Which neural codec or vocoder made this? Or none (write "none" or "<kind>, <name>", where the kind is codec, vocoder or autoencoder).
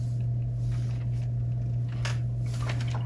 none